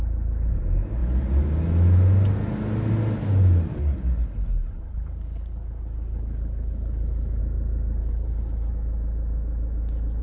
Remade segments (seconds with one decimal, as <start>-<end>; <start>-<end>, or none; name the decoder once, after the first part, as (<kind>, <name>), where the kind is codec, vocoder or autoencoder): 3.7-7.4 (codec, HILCodec); 8.0-8.7